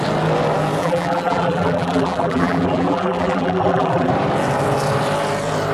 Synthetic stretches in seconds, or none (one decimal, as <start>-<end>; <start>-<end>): 0.8-4.1